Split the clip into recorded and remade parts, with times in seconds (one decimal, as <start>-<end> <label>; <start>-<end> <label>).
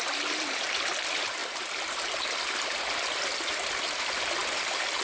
0.0-1.4 recorded; 1.4-2.0 remade; 2.0-4.4 recorded; 4.4-5.0 remade